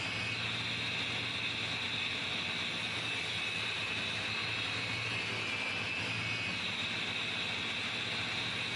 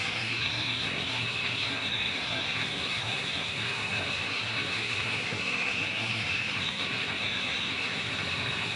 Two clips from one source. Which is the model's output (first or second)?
second